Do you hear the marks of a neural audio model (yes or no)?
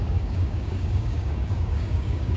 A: yes